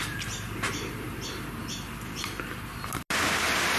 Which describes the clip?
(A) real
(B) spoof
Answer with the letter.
A